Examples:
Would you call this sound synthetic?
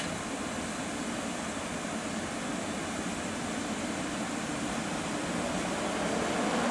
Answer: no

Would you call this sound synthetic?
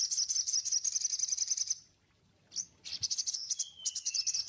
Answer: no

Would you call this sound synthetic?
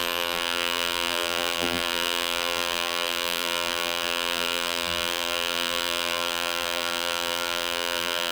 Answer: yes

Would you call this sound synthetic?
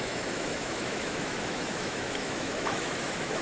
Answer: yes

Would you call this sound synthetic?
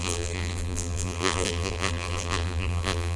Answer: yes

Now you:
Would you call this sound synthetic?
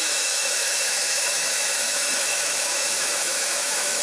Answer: yes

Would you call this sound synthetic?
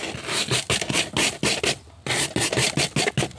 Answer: no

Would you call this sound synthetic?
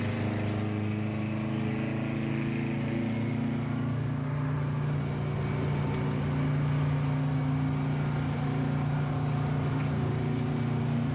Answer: no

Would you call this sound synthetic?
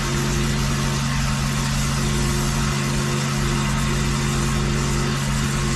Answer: no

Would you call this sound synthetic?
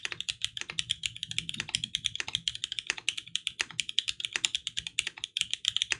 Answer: yes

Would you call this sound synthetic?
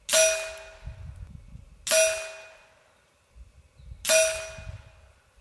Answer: no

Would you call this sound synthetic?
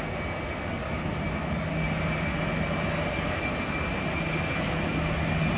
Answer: no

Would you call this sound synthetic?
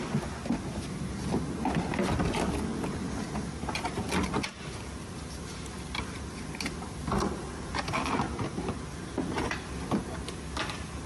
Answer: no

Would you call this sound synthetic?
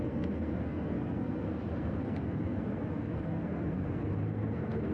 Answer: yes